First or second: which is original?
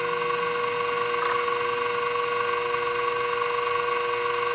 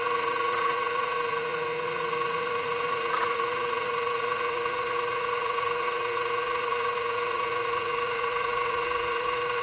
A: first